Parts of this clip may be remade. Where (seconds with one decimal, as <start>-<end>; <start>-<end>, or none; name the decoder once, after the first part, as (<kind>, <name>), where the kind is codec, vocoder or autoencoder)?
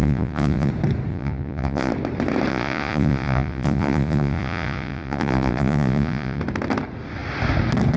0.0-0.7 (vocoder, Vocos); 1.1-1.9; 2.5-6.4